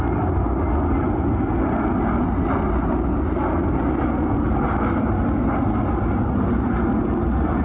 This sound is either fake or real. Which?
real